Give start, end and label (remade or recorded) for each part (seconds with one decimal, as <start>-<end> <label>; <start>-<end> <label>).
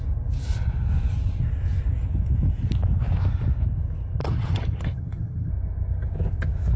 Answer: 0.0-4.2 recorded; 4.2-5.5 remade; 5.5-6.8 recorded